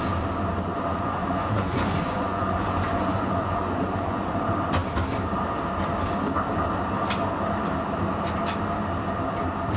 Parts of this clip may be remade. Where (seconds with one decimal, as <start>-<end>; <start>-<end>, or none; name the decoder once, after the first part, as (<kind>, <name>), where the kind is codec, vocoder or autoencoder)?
0.9-4.3 (vocoder, Vocos)